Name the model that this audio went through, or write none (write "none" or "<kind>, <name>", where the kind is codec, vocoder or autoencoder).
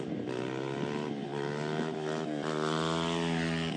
none